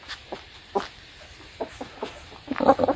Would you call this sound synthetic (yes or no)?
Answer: no